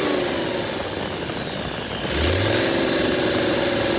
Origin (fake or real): real